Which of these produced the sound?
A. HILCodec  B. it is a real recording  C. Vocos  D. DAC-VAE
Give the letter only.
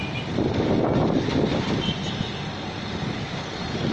B